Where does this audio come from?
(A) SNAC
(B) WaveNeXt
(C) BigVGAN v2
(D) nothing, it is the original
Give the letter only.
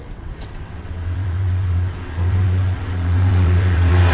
B